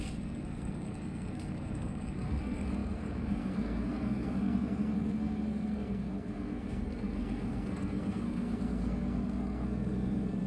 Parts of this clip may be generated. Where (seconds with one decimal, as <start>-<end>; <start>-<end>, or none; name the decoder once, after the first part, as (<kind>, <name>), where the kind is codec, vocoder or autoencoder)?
0.0-10.5 (codec, SNAC)